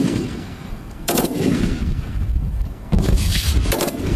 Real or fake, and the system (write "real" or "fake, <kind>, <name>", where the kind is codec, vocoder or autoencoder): fake, codec, SNAC